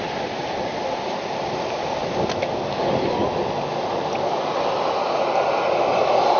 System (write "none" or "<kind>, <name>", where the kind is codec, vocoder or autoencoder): none